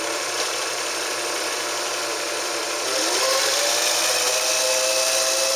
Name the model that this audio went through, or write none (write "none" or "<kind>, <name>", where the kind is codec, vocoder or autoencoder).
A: none